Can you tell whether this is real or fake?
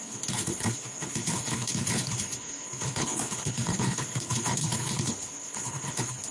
fake